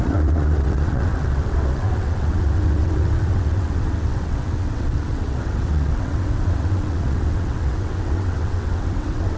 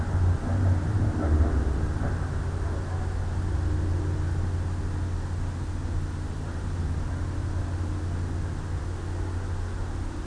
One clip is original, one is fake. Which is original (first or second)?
second